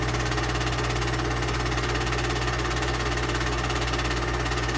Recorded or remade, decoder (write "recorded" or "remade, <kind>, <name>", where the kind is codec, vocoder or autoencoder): recorded